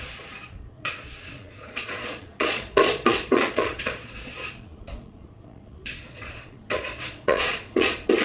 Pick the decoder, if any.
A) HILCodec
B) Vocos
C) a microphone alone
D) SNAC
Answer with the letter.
B